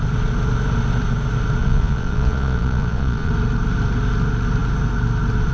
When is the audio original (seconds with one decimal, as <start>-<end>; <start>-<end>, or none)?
0.0-1.6; 3.3-5.5